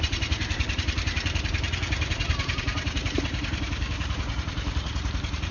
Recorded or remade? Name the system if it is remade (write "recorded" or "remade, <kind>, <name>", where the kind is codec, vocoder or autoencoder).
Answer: remade, vocoder, BigVGAN v2